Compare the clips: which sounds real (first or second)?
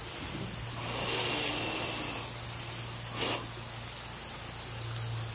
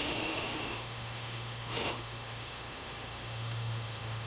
first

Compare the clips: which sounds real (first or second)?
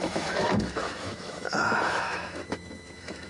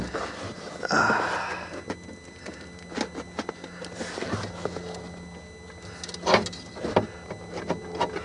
second